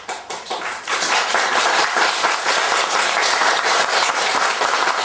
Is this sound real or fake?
fake